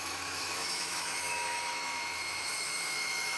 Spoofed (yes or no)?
yes